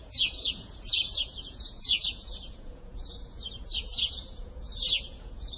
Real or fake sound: fake